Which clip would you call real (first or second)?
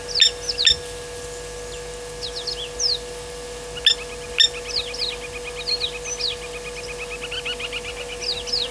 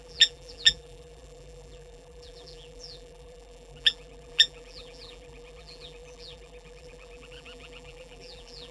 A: first